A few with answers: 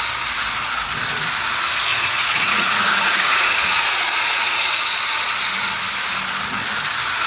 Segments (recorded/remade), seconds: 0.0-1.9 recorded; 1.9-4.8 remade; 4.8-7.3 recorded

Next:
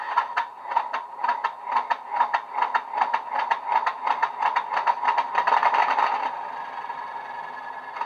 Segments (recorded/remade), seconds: 0.0-8.1 recorded

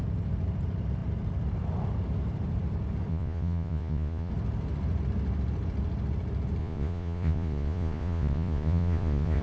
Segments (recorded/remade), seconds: 0.0-3.1 recorded; 3.1-4.3 remade; 4.3-6.6 recorded; 6.6-9.4 remade

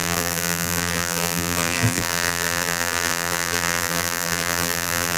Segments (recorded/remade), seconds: 0.0-5.2 remade